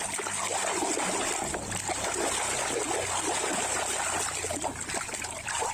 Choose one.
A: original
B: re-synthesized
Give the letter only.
A